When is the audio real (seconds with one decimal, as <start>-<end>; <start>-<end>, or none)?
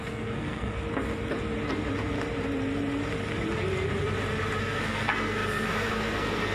0.7-4.6